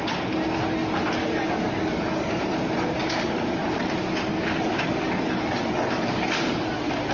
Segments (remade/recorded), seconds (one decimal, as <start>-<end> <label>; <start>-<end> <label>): 0.0-1.2 recorded; 1.2-2.4 remade; 2.4-3.0 recorded; 3.0-3.6 remade; 3.6-4.3 recorded; 4.3-7.1 remade